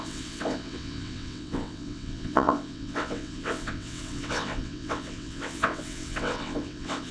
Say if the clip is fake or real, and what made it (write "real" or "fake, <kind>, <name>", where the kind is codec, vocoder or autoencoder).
fake, vocoder, WaveNeXt